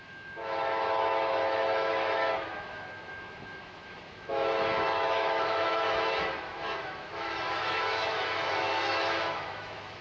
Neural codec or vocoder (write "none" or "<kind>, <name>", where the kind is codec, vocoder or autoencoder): autoencoder, DAC-VAE